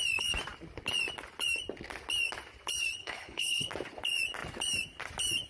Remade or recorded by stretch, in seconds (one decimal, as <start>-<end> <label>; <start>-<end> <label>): 0.0-3.0 recorded; 3.0-3.7 remade; 3.7-5.5 recorded